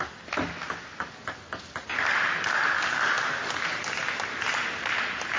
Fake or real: real